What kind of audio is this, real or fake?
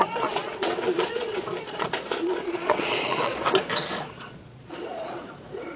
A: fake